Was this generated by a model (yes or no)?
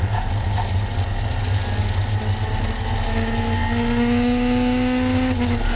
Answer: no